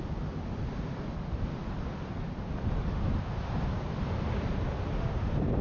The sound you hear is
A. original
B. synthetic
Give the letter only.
A